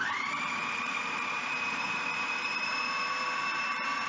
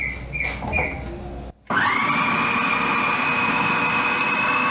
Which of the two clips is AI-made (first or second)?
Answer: first